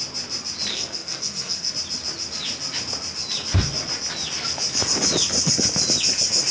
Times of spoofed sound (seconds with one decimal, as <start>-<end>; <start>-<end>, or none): 0.7-1.7